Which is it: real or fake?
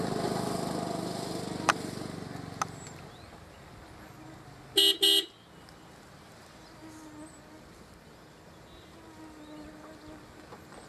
real